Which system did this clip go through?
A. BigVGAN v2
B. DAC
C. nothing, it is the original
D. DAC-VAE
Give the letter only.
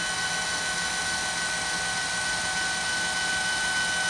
C